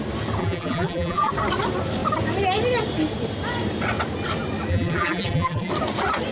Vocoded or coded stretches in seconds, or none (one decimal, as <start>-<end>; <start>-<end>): 0.4-1.3; 4.7-5.7